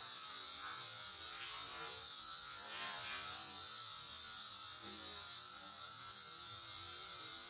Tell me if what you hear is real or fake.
real